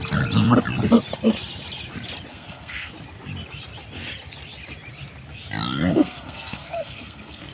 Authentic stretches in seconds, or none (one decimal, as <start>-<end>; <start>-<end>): 0.0-2.3; 2.9-5.9